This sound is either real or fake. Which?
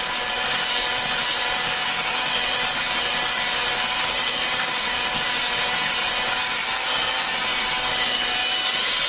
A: real